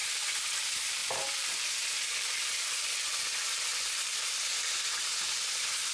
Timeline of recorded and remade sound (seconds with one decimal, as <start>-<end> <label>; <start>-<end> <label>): 0.0-0.6 recorded; 0.6-5.9 remade